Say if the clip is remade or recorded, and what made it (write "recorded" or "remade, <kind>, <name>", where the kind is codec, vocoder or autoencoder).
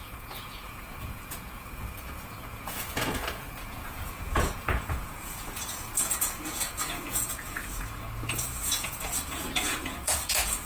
remade, vocoder, Vocos